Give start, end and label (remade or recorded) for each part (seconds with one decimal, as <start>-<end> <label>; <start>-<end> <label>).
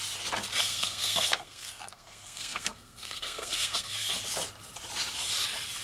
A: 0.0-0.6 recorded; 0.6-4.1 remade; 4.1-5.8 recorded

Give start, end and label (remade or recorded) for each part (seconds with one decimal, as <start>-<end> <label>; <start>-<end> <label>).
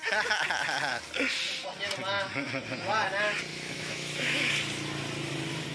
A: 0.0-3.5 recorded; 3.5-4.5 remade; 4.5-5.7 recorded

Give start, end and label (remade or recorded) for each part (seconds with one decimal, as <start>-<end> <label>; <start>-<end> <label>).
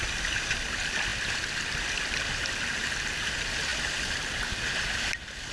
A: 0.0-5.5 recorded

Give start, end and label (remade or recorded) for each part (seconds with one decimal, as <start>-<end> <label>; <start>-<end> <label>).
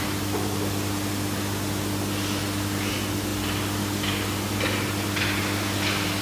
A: 0.0-6.2 recorded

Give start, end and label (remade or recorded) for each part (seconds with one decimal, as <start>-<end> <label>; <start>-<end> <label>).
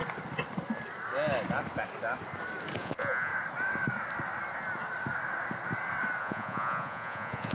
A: 0.0-2.8 recorded; 2.8-3.3 remade; 3.3-6.2 recorded; 6.2-7.5 remade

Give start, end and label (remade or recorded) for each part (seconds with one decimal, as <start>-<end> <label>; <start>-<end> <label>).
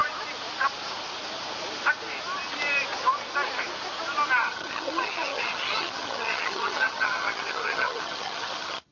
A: 0.0-4.4 recorded; 4.4-8.9 remade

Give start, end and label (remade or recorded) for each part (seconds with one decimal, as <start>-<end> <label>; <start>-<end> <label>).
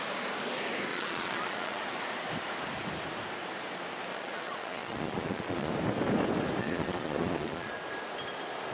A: 0.0-0.9 recorded; 0.9-1.8 remade; 1.8-4.1 recorded; 4.1-5.7 remade; 5.7-6.6 recorded; 6.6-7.7 remade; 7.7-8.7 recorded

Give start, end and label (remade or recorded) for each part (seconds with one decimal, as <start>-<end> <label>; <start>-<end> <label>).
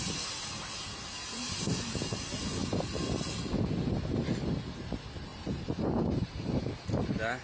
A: 0.0-5.3 recorded; 5.3-6.6 remade; 6.6-7.4 recorded